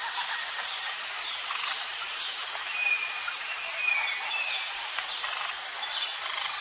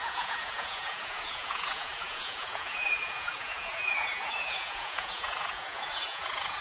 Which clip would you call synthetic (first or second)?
second